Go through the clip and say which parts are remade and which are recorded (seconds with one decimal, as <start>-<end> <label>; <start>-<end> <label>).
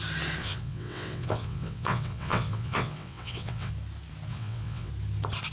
0.0-0.4 recorded; 0.4-3.7 remade; 3.7-4.3 recorded; 4.3-4.9 remade; 4.9-5.5 recorded